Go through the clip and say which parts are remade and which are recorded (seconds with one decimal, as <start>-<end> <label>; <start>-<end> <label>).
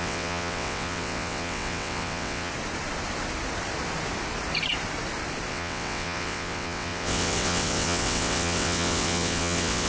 0.0-2.5 remade; 2.5-5.5 recorded; 5.5-9.9 remade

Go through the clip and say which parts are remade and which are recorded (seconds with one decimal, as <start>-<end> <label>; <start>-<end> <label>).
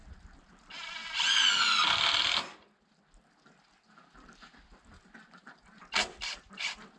0.0-7.0 recorded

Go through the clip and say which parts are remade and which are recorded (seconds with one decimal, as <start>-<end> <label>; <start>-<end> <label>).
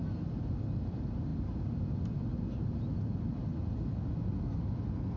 0.0-5.2 recorded